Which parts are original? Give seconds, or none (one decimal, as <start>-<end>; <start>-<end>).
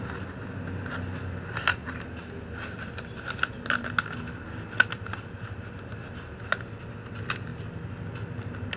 0.0-8.8